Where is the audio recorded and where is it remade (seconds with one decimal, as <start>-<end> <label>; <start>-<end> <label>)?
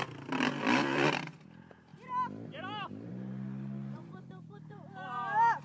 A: 0.0-4.7 recorded; 4.7-5.6 remade